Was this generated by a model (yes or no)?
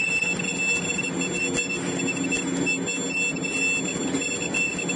no